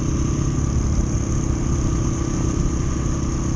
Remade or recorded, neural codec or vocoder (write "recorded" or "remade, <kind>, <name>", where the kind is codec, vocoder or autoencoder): recorded